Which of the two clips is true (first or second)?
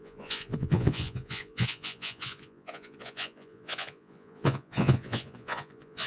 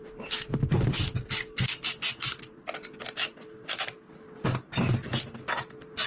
second